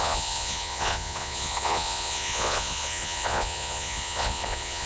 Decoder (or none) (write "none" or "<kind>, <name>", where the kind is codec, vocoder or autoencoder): vocoder, Vocos